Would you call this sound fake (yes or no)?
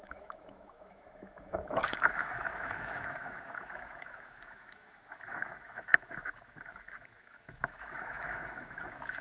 yes